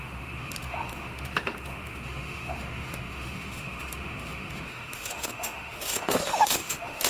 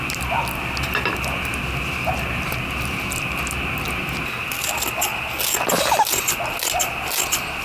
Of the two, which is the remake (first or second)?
first